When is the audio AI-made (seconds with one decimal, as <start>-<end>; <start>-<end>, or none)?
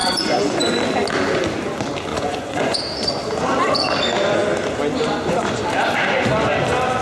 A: 0.0-0.6; 2.1-2.8